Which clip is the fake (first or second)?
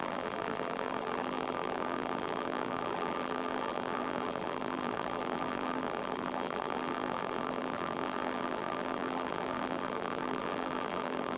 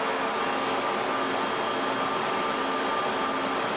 first